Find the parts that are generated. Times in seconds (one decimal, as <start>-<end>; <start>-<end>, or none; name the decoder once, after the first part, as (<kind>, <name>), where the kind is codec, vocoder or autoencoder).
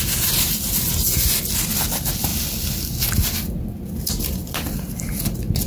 4.4-5.1 (vocoder, BigVGAN v2)